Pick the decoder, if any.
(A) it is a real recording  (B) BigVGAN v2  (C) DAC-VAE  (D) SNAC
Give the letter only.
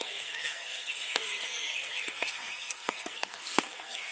D